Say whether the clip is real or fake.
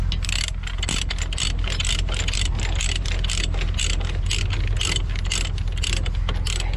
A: real